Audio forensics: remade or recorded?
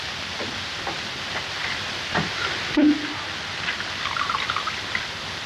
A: recorded